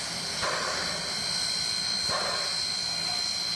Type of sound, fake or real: real